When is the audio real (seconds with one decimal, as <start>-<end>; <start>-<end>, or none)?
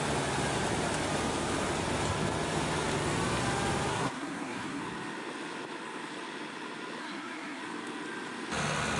0.0-3.9; 4.8-7.0; 7.6-9.0